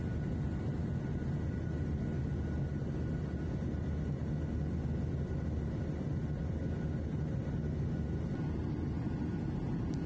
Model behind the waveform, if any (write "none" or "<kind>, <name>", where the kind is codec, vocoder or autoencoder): none